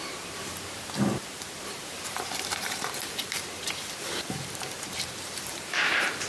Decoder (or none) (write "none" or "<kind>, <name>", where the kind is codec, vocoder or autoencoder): vocoder, BigVGAN v2